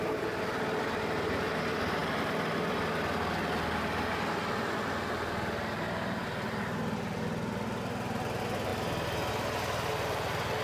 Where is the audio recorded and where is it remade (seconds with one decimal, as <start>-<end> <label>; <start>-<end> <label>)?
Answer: 0.0-10.6 recorded